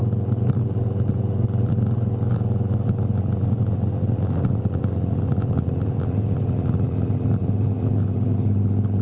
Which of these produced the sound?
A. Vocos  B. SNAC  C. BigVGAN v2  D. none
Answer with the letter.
D